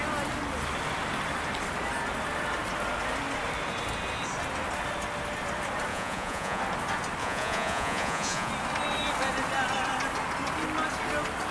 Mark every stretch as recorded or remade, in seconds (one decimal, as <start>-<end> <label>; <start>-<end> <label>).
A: 0.0-5.9 recorded; 5.9-6.6 remade; 6.6-7.2 recorded; 7.2-8.5 remade; 8.5-11.5 recorded